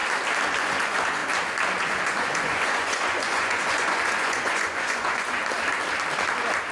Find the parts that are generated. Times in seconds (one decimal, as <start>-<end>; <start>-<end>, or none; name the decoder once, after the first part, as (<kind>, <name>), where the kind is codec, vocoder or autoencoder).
0.6-1.2 (vocoder, Vocos); 1.8-5.4